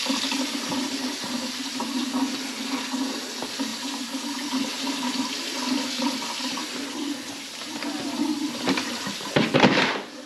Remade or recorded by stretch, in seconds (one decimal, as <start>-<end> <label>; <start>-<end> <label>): 0.0-10.3 recorded